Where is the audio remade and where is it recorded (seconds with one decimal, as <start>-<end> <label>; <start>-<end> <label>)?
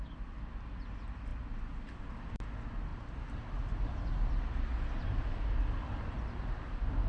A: 0.0-7.1 recorded